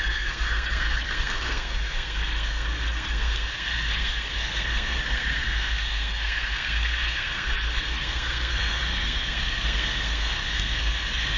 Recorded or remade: remade